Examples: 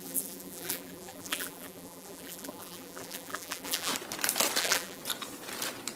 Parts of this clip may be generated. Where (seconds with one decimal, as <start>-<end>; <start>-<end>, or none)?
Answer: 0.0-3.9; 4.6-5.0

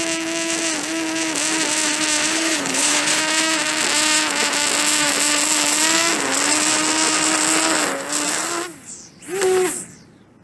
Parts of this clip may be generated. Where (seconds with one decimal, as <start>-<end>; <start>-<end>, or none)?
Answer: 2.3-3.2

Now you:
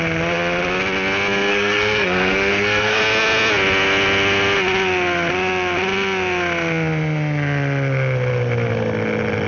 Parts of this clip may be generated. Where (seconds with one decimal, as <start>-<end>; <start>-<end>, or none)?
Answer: 1.5-3.0

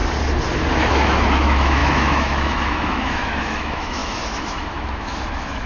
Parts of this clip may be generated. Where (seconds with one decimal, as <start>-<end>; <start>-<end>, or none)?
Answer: 0.9-5.7